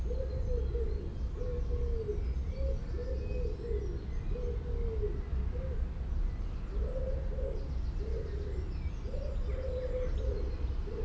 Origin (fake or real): real